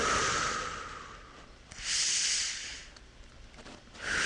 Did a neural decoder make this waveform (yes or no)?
no